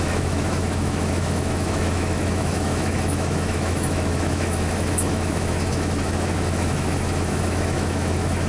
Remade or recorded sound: remade